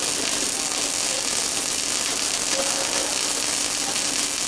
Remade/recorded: recorded